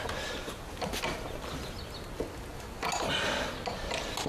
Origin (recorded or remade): recorded